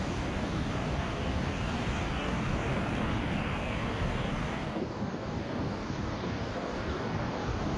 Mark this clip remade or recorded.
remade